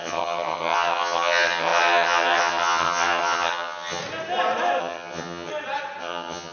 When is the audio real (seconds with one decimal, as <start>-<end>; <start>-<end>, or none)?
4.0-4.8; 5.5-6.0

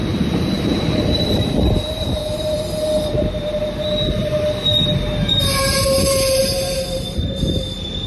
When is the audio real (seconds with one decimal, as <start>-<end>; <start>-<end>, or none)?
none

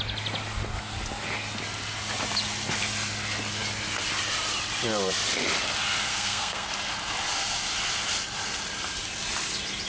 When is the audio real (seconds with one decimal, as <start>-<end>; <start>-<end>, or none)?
0.0-6.1; 6.7-9.9

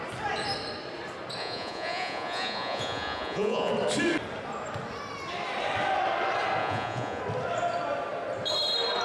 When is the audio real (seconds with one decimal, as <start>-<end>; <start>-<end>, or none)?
0.0-1.4; 3.7-6.6; 7.2-9.0

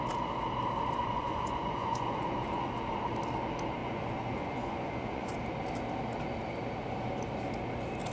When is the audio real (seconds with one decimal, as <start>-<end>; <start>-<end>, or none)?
0.0-1.0; 2.7-3.8; 5.3-8.1

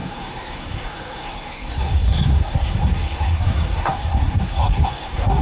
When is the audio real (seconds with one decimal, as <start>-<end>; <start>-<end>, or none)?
none

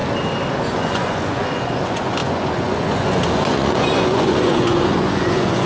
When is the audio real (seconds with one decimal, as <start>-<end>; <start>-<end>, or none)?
0.0-0.6

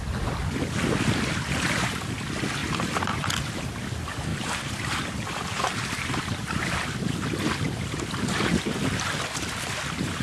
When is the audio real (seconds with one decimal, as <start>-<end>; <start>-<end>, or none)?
0.0-2.6; 3.3-4.3; 7.0-10.2